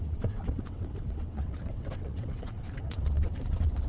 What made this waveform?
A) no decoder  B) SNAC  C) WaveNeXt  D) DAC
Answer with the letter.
C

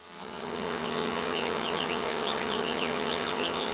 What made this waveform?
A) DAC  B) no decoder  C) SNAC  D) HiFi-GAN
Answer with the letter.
D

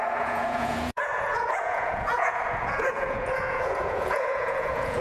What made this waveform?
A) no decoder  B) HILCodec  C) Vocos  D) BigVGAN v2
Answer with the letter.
C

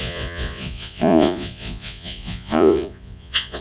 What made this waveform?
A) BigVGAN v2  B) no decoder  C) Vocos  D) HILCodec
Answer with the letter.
C